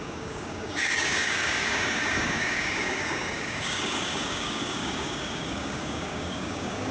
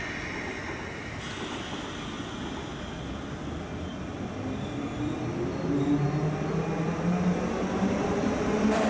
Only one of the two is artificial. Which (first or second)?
first